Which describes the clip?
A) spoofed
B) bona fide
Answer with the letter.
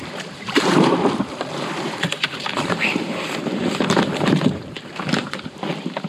A